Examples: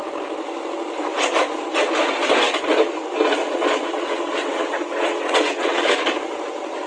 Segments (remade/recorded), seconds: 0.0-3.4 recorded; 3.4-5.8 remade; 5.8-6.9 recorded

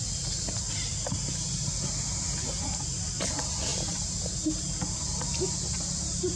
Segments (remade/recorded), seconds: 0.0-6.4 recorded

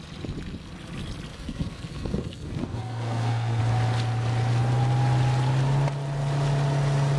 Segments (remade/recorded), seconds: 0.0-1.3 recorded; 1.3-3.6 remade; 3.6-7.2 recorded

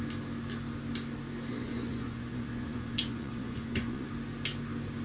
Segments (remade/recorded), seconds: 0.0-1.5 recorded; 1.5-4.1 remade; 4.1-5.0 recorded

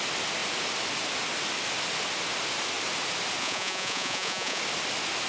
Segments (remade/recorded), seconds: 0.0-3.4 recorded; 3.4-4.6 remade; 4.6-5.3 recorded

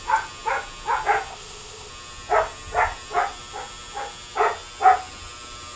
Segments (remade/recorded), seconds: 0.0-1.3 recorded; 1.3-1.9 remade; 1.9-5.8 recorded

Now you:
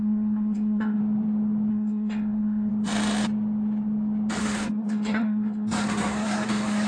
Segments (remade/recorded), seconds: 0.0-1.0 remade; 1.0-1.7 recorded; 1.7-2.7 remade; 2.7-4.4 recorded; 4.4-6.9 remade

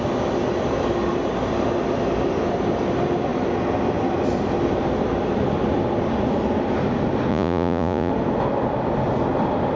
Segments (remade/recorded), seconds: 0.0-7.3 recorded; 7.3-8.1 remade; 8.1-9.8 recorded